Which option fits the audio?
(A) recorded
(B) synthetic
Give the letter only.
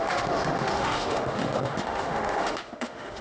B